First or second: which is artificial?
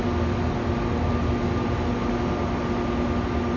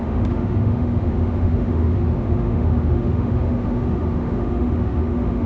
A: second